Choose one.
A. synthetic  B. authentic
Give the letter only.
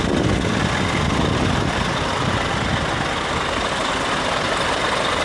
B